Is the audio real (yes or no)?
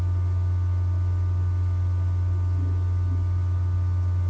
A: yes